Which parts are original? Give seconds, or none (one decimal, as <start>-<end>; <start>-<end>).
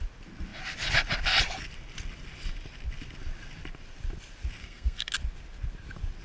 0.0-4.6; 5.1-6.2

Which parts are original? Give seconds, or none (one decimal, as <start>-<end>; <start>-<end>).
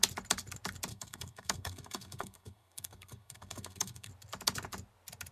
0.0-0.9; 4.1-5.3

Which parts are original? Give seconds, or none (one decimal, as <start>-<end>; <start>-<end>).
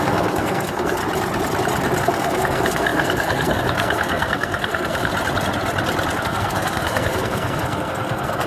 1.0-2.0; 5.1-6.2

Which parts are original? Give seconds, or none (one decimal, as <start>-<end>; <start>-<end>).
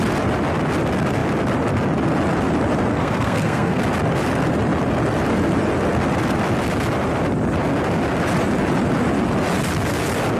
0.0-2.9; 3.8-10.4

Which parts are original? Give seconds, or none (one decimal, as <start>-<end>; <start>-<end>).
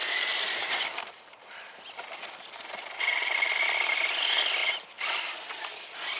0.0-6.2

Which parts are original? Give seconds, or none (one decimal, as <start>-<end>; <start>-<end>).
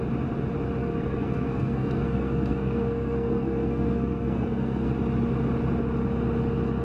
0.0-0.8; 4.9-6.8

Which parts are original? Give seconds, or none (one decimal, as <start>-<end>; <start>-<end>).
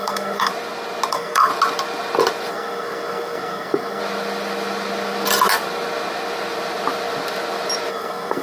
0.5-1.1; 1.5-2.5; 4.0-7.9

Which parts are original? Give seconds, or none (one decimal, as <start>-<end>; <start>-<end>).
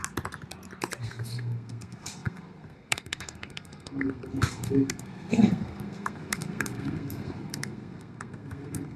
0.0-1.0